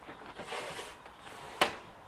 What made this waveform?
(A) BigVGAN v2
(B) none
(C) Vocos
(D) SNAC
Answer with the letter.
B